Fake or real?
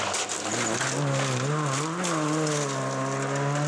real